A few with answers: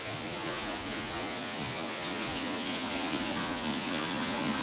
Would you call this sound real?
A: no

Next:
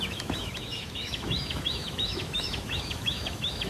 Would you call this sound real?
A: no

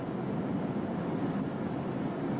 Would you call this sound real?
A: yes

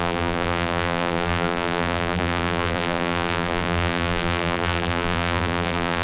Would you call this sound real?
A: no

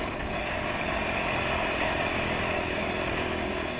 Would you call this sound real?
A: no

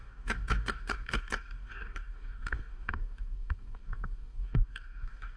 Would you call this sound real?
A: no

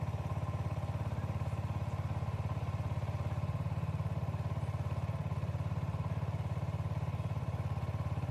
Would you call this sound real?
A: no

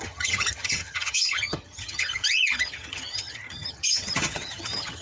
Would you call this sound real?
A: no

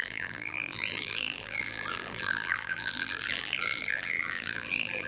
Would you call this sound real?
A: no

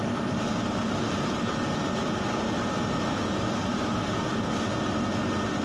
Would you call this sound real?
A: yes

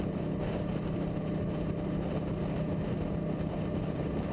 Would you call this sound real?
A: yes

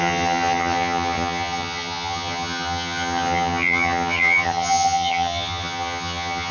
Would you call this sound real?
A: no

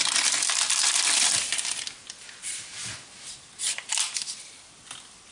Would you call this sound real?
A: yes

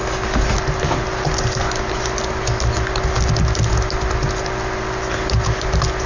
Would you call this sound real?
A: yes